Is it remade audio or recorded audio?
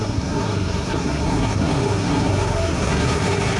remade